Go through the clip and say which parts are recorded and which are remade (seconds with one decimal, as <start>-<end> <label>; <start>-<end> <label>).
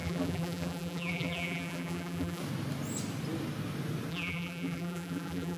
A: 0.0-2.4 remade; 2.4-4.1 recorded; 4.1-5.6 remade